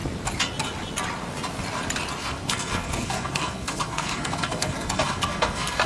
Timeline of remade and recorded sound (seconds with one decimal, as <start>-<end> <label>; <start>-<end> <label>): 0.0-2.2 recorded; 2.2-5.9 remade